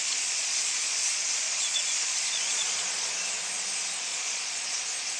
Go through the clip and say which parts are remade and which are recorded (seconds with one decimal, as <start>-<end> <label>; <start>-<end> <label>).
0.0-3.1 remade; 3.1-4.1 recorded; 4.1-4.8 remade; 4.8-5.2 recorded